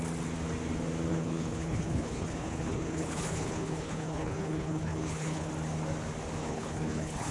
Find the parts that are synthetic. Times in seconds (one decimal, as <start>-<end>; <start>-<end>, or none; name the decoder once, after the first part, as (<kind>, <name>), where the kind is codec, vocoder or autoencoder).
1.1-5.5 (codec, HILCodec); 6.4-7.3